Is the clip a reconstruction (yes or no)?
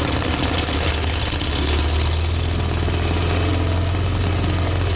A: no